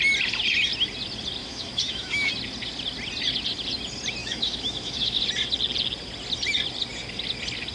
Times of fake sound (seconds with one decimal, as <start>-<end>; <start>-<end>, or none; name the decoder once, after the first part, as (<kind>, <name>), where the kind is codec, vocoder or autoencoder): 1.4-2.3 (autoencoder, DAC-VAE); 4.2-5.2